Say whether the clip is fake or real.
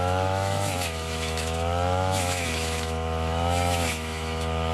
fake